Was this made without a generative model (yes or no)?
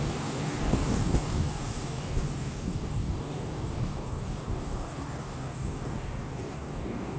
no